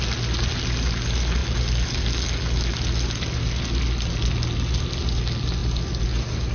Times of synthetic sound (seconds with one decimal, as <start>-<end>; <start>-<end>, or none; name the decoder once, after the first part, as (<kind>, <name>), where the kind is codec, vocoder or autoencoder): none